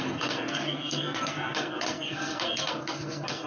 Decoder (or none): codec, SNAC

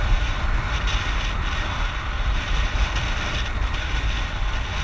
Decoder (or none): none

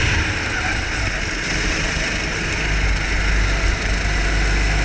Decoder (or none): none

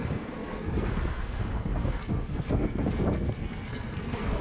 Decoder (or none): codec, SNAC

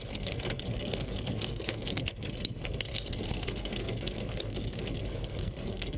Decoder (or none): codec, SNAC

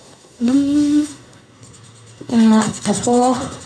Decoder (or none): codec, SNAC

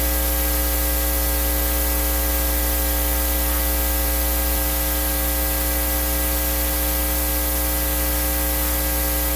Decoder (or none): none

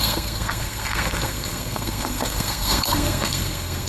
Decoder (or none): codec, SNAC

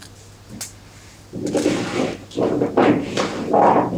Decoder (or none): none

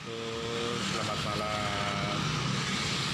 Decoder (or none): none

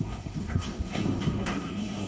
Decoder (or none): codec, SNAC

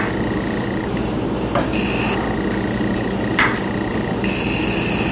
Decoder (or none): none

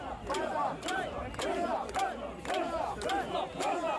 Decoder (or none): none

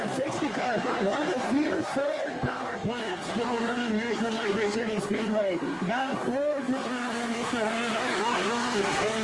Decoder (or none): codec, SNAC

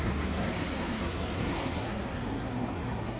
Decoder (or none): codec, SNAC